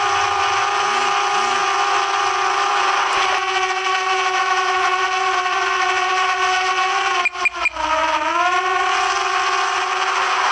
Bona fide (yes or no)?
yes